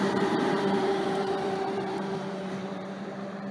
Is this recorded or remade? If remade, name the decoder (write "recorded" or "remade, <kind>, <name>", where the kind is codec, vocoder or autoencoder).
remade, vocoder, BigVGAN v2